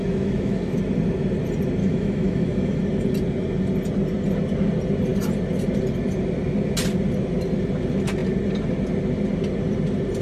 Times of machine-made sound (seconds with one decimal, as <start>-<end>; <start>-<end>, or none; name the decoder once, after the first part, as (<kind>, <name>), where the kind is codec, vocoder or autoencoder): 0.0-0.8 (autoencoder, DAC-VAE); 1.8-2.8